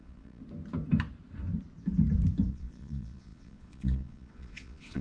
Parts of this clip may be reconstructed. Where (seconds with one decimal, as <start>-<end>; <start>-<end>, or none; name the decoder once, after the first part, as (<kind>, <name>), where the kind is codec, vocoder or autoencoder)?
0.0-0.4 (vocoder, Vocos); 2.5-5.0

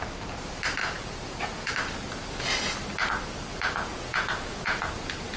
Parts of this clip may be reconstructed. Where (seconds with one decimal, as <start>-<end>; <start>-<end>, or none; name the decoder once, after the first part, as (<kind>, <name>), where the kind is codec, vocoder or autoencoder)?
0.8-1.7 (vocoder, Vocos); 3.9-4.8

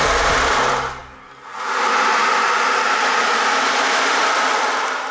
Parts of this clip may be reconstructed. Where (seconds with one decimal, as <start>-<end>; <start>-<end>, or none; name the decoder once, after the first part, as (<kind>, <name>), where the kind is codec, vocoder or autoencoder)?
none